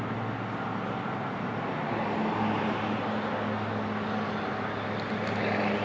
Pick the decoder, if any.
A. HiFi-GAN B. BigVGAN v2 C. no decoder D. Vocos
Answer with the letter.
C